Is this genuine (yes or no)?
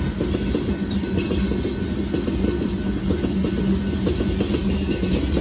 yes